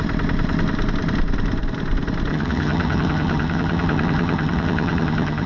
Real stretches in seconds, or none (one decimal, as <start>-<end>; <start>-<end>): 0.0-2.3